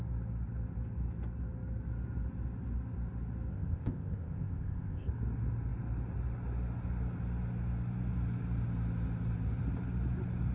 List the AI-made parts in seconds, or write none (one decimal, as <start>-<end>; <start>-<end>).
3.5-5.1